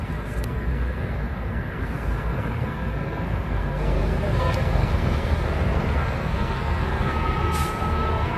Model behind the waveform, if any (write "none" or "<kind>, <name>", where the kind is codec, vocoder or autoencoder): codec, SNAC